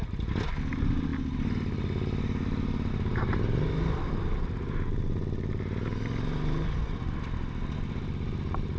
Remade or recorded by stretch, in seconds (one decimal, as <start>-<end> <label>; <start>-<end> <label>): 0.0-8.8 recorded